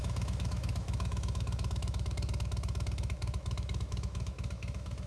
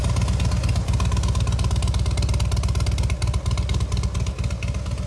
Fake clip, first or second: first